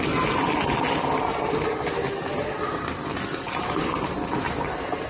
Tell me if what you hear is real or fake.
real